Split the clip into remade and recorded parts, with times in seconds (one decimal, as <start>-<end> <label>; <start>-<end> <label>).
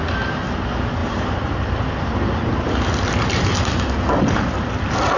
0.0-5.2 recorded